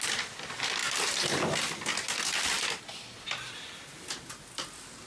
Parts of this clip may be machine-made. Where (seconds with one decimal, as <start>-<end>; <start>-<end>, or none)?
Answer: none